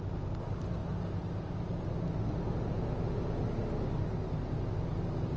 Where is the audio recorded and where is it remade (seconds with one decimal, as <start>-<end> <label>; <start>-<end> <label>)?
0.0-5.4 recorded